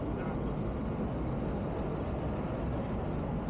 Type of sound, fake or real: real